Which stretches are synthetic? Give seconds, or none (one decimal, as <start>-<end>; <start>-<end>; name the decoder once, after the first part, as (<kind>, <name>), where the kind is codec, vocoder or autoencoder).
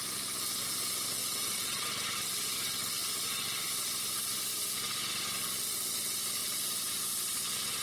1.2-2.2 (vocoder, BigVGAN v2); 6.4-7.0